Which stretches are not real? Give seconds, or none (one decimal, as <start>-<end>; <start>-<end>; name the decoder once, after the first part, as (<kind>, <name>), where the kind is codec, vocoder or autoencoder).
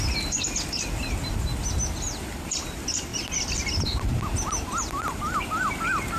none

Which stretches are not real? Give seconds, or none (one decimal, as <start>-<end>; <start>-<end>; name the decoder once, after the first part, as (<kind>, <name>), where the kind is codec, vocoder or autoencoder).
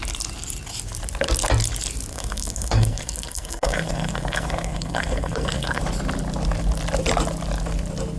2.1-5.8 (codec, SNAC)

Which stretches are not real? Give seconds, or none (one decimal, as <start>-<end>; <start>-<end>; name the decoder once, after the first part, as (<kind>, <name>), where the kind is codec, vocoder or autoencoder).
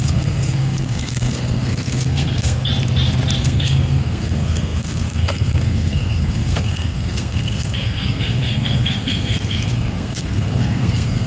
0.0-2.7 (codec, SNAC); 3.4-11.3